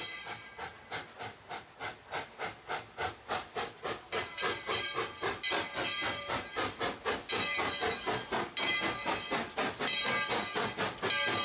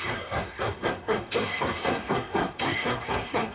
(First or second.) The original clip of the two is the first